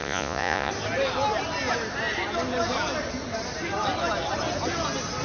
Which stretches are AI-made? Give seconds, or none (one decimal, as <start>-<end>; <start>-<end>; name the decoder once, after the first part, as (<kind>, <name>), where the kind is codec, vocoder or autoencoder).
0.0-0.7 (vocoder, Vocos)